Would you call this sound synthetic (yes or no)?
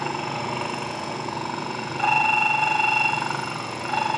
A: yes